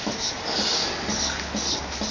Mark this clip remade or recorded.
recorded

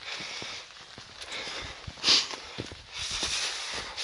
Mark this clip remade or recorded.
recorded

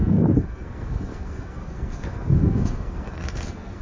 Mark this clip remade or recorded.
remade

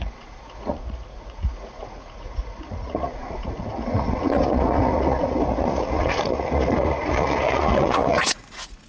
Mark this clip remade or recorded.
remade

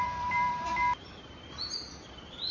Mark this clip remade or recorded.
remade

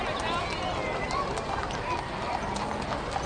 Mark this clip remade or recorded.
recorded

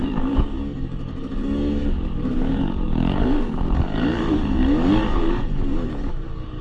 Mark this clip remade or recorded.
remade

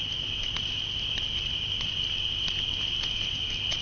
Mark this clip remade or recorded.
recorded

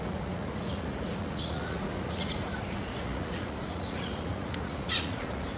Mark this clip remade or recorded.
remade